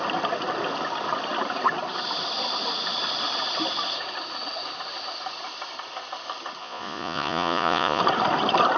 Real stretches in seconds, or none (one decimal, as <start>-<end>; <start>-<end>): 0.0-6.6; 8.0-8.8